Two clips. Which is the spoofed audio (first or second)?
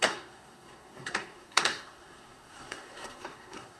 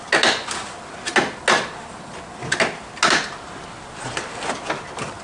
first